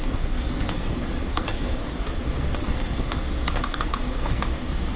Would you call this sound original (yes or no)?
no